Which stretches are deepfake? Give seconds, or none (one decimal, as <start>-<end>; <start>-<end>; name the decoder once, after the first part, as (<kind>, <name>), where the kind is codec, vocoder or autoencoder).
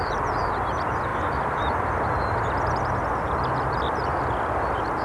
none